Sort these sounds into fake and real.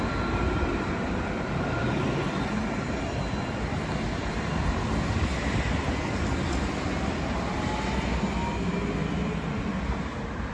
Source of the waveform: real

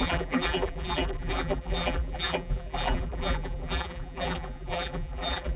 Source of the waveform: fake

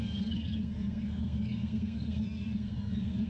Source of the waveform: fake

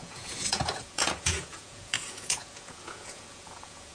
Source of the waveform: fake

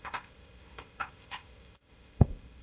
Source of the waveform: fake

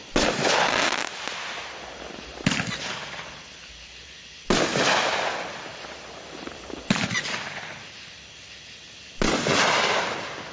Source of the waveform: real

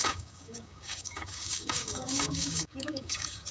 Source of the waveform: fake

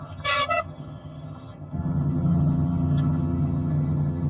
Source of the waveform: fake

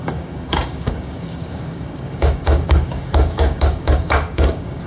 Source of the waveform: fake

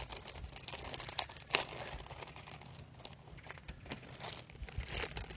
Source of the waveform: real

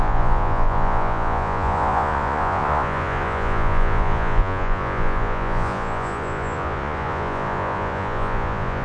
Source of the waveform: fake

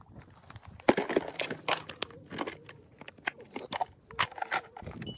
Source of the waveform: real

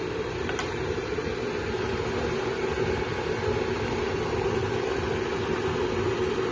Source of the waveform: real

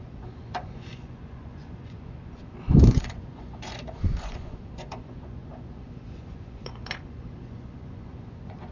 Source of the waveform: fake